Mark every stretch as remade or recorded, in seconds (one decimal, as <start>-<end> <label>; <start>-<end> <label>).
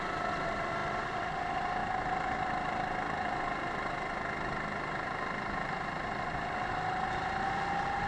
0.0-8.1 recorded